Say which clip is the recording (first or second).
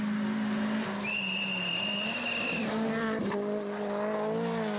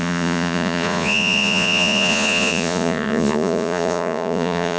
first